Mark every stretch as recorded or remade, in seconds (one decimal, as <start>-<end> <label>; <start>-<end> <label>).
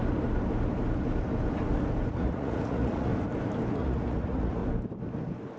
0.0-2.1 recorded; 2.1-3.1 remade; 3.1-3.7 recorded; 3.7-4.6 remade; 4.6-5.6 recorded